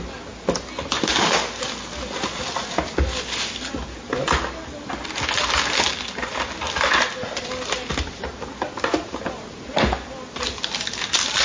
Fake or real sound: real